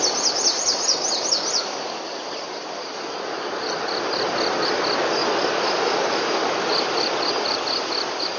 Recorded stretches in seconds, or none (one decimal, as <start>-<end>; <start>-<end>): 0.0-8.4